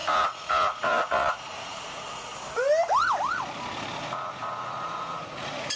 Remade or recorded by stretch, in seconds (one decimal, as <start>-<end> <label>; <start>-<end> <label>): 0.0-2.3 remade; 2.3-4.0 recorded; 4.0-5.8 remade